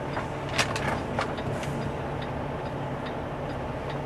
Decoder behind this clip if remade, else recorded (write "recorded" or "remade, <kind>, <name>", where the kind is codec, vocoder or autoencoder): recorded